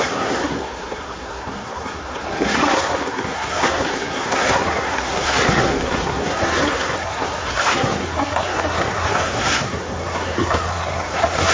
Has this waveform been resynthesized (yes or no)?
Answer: yes